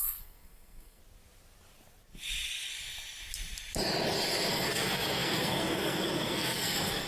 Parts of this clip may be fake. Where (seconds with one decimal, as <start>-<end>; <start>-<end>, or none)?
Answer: 0.0-1.0; 4.5-7.1